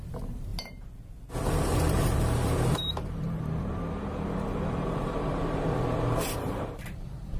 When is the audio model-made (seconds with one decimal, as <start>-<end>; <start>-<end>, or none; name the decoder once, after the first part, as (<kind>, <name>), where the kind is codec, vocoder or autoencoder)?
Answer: 0.0-0.5 (vocoder, BigVGAN v2); 1.4-7.4